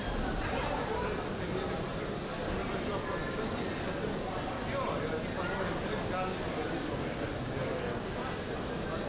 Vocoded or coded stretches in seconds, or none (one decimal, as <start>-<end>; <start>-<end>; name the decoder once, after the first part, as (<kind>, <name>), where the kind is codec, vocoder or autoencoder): none